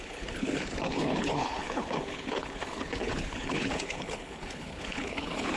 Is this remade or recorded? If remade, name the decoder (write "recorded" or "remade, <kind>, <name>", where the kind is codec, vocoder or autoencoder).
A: remade, codec, HILCodec